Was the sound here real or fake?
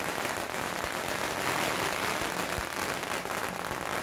real